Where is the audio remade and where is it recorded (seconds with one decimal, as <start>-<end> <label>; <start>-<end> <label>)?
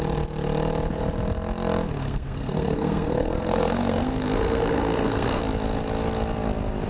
0.0-2.0 recorded; 2.0-5.4 remade; 5.4-6.9 recorded